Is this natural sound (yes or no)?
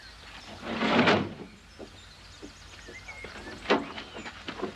yes